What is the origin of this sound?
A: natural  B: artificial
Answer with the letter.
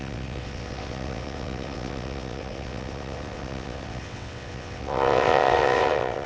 B